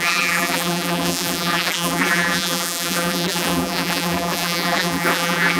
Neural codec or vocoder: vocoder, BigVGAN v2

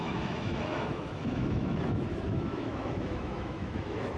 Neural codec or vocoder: autoencoder, DAC-VAE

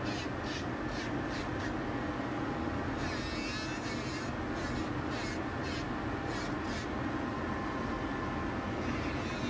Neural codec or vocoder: none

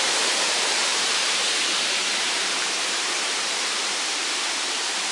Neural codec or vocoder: vocoder, BigVGAN v2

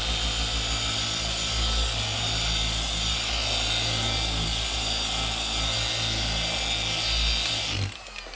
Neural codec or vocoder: none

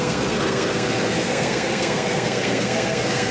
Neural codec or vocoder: codec, SNAC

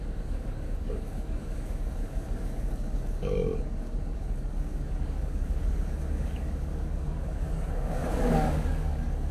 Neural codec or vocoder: codec, DAC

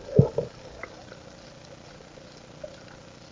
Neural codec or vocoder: none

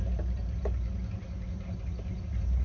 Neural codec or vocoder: vocoder, BigVGAN v2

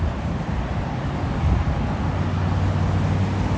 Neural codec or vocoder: none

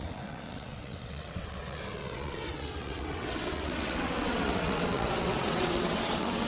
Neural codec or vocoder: vocoder, WaveNeXt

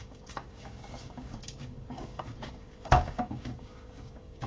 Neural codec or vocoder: codec, DAC